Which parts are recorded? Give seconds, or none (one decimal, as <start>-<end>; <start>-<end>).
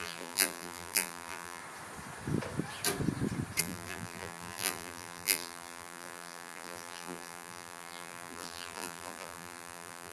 1.6-3.6